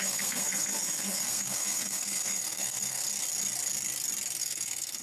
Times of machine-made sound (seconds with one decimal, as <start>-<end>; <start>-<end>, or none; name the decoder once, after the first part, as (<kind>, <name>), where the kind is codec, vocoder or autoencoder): 0.0-3.0 (codec, SNAC); 4.4-5.0